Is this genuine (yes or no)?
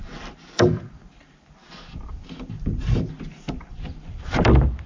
no